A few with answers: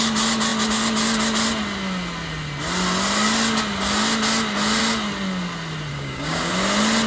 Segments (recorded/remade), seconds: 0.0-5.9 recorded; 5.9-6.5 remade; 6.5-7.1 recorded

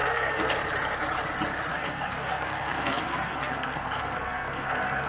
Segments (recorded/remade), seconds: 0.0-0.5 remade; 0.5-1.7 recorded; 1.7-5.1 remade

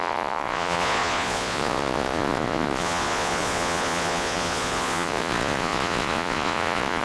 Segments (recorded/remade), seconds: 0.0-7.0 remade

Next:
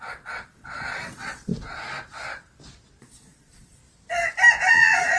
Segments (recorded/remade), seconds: 0.0-1.5 remade; 1.5-3.0 recorded; 3.0-3.8 remade; 3.8-4.7 recorded; 4.7-5.2 remade